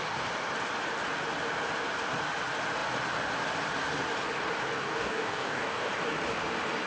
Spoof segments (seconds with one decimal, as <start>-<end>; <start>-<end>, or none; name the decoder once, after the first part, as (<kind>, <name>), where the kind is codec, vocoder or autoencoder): 4.8-5.9 (codec, DAC)